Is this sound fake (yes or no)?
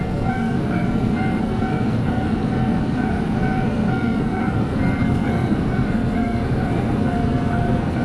yes